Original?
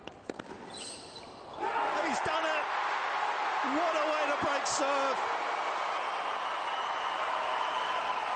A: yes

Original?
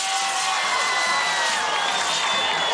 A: no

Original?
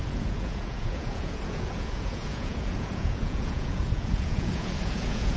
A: no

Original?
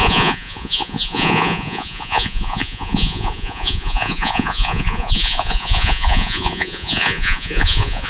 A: no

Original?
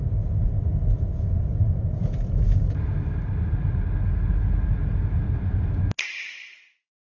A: yes